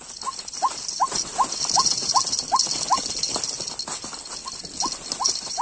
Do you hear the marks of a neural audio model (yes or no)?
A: no